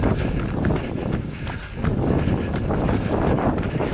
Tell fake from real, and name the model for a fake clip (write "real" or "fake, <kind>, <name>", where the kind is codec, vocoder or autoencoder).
real